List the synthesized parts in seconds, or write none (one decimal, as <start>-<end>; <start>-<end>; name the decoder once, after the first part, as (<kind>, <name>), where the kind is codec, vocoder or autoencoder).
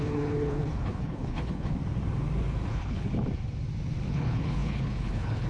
0.0-1.8 (codec, HILCodec); 2.7-3.1; 4.1-5.5